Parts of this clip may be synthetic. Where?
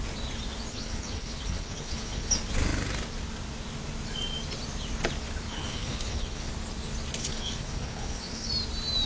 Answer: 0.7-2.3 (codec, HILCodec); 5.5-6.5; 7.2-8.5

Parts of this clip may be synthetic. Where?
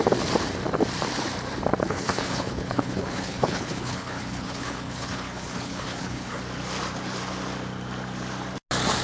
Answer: 1.8-6.4 (codec, HILCodec)